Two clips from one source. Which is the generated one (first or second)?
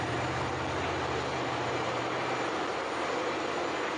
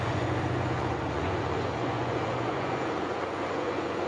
second